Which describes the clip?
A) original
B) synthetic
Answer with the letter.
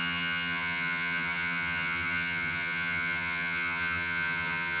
B